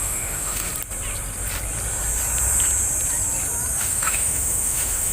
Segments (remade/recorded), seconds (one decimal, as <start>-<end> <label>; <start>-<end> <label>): 0.0-0.7 remade; 0.7-3.8 recorded; 3.8-5.1 remade